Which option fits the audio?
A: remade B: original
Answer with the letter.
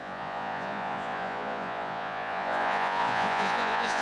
A